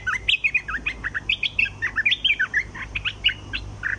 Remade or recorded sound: recorded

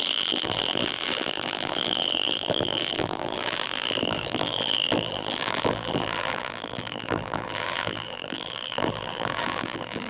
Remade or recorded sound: remade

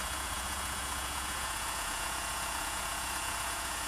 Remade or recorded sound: remade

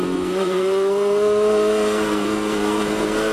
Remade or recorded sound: remade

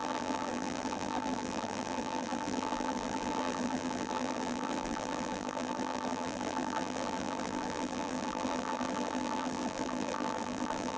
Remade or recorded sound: remade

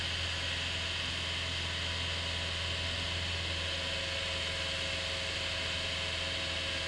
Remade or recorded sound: recorded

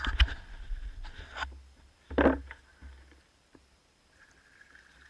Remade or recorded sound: recorded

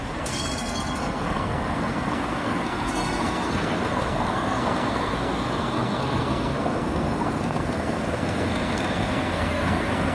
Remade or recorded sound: remade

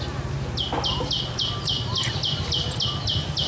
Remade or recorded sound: recorded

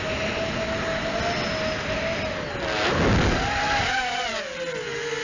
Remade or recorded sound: recorded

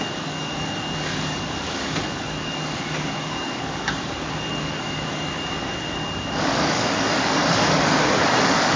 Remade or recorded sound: remade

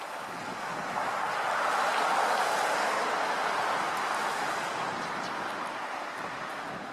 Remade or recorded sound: recorded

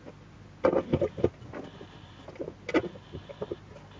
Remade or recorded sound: recorded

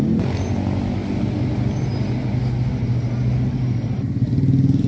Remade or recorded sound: recorded